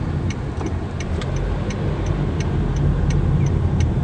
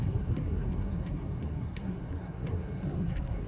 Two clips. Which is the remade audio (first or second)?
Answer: second